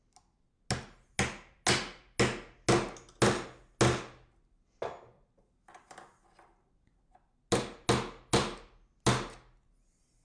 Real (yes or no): yes